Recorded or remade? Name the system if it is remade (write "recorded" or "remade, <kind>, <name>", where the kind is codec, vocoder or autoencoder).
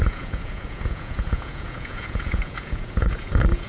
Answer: remade, vocoder, Vocos